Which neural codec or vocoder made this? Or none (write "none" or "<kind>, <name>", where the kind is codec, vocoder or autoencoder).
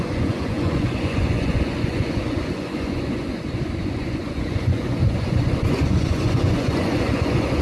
vocoder, Vocos